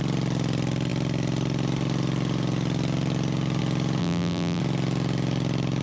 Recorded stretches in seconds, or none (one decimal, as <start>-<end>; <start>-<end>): 0.0-4.0; 4.6-5.8